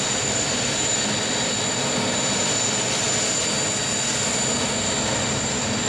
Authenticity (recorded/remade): recorded